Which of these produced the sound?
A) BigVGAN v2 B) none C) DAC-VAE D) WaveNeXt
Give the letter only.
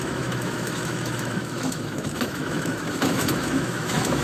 C